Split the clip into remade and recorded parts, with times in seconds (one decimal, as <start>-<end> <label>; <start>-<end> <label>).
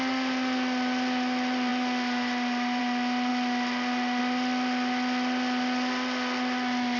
0.0-7.0 recorded